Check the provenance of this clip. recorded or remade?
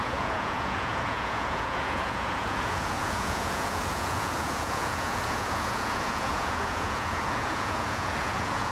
remade